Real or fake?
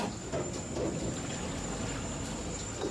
real